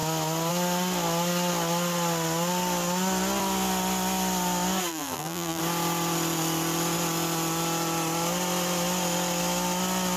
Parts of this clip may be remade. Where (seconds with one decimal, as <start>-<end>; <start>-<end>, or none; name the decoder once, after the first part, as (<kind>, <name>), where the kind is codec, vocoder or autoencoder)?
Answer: 4.9-5.6 (vocoder, BigVGAN v2)